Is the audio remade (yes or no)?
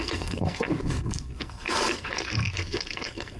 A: yes